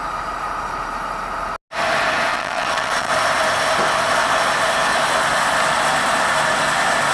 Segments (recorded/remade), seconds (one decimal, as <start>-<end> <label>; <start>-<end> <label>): 0.0-2.3 recorded; 2.3-3.1 remade; 3.1-7.1 recorded